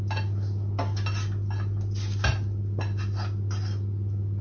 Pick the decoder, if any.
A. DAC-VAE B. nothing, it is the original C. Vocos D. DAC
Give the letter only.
B